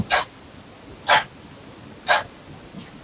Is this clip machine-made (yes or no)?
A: no